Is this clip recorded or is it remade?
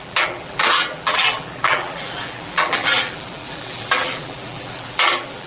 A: remade